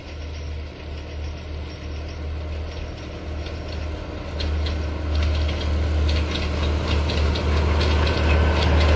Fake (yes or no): no